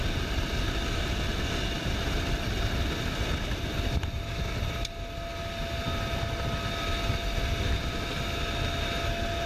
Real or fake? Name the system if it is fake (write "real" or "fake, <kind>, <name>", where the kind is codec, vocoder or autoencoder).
real